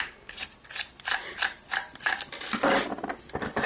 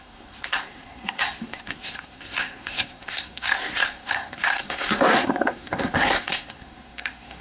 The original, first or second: first